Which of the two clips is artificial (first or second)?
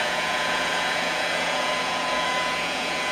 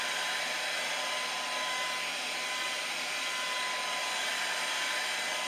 first